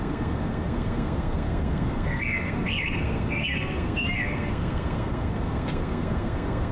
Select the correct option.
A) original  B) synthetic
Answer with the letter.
B